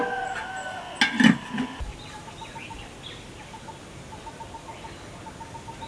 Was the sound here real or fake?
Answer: real